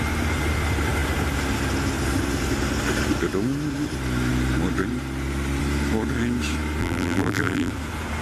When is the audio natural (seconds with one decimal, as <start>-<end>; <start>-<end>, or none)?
0.0-6.8; 7.7-8.2